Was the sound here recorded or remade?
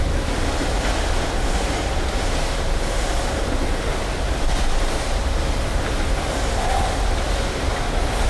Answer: recorded